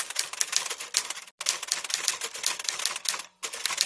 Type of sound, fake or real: real